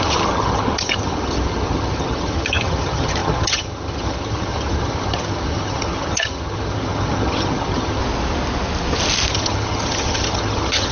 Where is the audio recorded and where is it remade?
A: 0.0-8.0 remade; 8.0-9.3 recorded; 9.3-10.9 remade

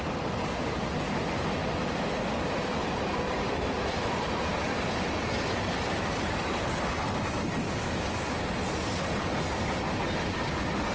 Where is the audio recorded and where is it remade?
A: 0.0-1.6 recorded; 1.6-6.6 remade; 6.6-10.9 recorded

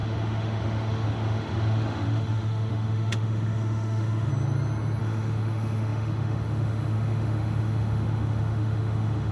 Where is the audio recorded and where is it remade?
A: 0.0-4.3 remade; 4.3-5.0 recorded; 5.0-9.3 remade

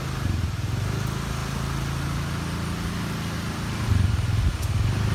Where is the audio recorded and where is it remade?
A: 0.0-5.1 recorded

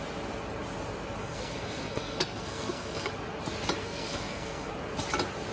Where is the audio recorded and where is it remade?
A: 0.0-1.2 recorded; 1.2-3.1 remade; 3.1-3.8 recorded; 3.8-4.7 remade; 4.7-5.5 recorded

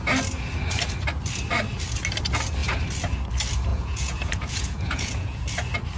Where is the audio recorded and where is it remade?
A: 0.0-3.7 recorded; 3.7-5.4 remade; 5.4-6.0 recorded

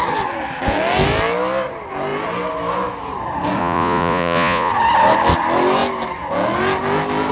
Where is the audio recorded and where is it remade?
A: 0.0-3.6 recorded; 3.6-4.7 remade; 4.7-7.3 recorded